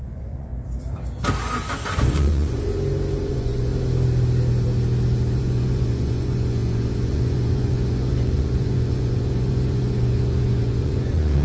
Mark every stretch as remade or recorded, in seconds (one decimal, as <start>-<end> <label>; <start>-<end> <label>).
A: 0.0-0.5 remade; 0.5-2.1 recorded; 2.1-2.7 remade; 2.7-3.3 recorded; 3.3-3.7 remade; 3.7-5.4 recorded; 5.4-11.4 remade